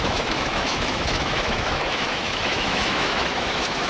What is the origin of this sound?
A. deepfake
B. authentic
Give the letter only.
A